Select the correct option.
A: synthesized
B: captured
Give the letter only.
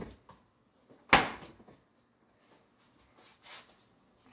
B